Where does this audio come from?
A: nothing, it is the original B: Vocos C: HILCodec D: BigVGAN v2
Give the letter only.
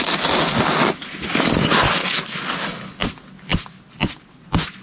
A